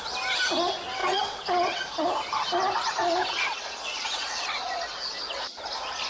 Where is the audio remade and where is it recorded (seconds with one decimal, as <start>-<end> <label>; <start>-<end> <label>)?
0.0-1.0 recorded; 1.0-1.8 remade; 1.8-6.1 recorded